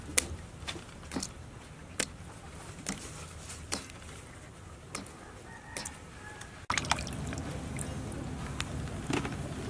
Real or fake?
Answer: real